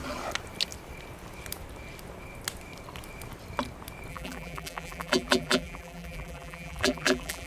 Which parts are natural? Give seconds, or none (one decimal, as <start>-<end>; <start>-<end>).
0.0-4.1